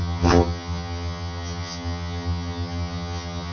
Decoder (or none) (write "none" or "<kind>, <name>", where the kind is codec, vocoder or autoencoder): vocoder, HiFi-GAN